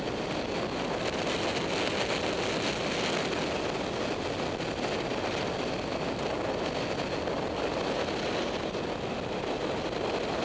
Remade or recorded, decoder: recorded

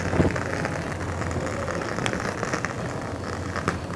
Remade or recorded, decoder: recorded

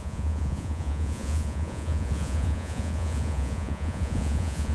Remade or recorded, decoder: remade, vocoder, Vocos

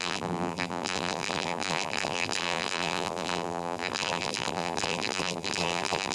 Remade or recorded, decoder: remade, vocoder, BigVGAN v2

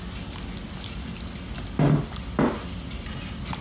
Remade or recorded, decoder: recorded